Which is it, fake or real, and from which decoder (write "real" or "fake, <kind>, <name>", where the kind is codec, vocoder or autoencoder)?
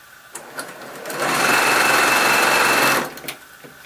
real